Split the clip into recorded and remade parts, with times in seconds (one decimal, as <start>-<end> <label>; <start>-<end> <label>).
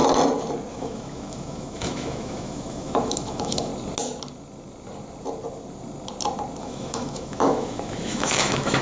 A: 0.0-0.7 recorded; 0.7-3.7 remade; 3.7-6.6 recorded; 6.6-8.8 remade